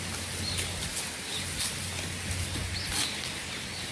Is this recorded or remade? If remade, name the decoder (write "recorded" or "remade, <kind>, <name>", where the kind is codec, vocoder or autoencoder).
recorded